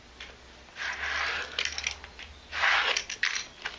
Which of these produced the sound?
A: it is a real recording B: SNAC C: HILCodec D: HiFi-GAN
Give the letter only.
A